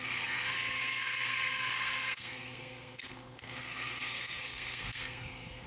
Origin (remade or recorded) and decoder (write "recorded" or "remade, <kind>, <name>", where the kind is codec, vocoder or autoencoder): remade, codec, SNAC